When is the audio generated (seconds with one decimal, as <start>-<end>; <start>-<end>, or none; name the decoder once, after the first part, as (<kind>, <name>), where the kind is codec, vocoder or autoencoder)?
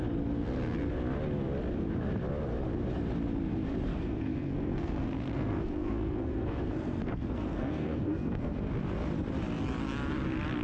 3.9-8.6 (codec, SNAC)